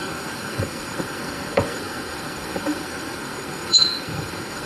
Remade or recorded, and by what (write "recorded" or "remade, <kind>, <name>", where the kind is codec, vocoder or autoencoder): remade, codec, SNAC